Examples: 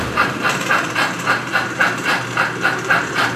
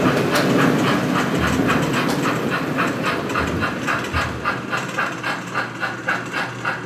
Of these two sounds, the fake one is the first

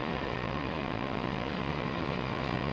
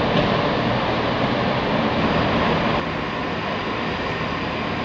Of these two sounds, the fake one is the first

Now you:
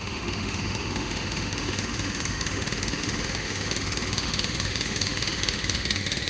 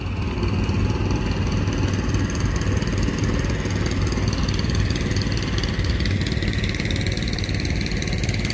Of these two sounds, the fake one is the first